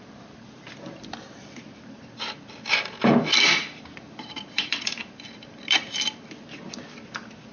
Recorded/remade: remade